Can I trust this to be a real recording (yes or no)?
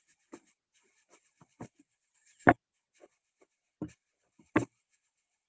yes